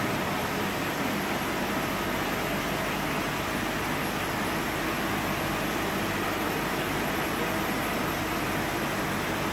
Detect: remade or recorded recorded